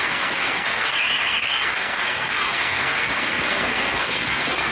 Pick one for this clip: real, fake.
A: fake